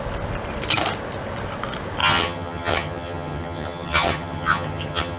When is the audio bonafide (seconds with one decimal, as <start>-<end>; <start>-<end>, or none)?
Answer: 0.0-2.0